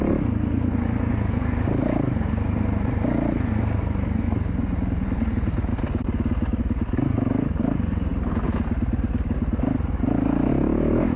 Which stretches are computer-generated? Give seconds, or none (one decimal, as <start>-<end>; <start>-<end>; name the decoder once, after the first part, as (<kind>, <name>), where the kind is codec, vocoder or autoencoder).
none